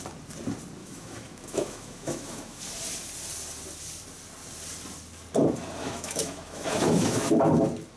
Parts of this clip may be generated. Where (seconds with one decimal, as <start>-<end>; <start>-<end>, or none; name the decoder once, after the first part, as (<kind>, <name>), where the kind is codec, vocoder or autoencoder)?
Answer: 0.8-2.6 (autoencoder, DAC-VAE); 5.8-7.4